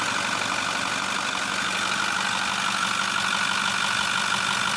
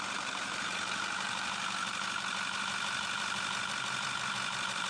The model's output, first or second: second